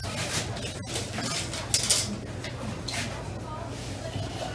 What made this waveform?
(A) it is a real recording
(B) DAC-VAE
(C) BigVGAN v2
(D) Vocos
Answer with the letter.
A